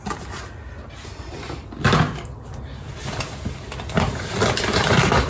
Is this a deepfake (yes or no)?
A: no